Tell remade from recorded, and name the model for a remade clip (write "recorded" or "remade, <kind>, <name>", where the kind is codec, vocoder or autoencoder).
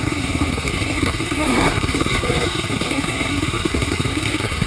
remade, codec, SNAC